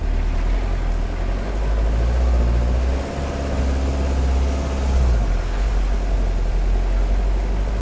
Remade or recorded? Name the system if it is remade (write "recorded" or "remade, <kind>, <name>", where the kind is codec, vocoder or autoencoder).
recorded